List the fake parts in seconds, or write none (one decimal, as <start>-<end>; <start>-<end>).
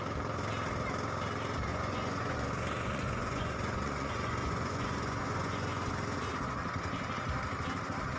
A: 1.7-5.9